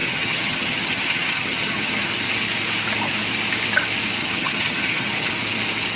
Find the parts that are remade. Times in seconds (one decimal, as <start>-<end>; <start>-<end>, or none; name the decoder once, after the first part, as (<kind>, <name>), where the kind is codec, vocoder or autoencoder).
0.0-2.1 (vocoder, HiFi-GAN); 4.2-5.3